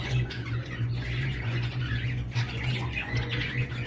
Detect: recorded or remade remade